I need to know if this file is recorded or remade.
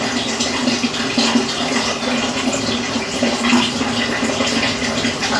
recorded